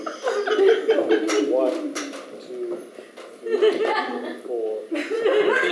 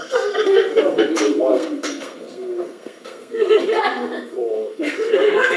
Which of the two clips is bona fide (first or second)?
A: first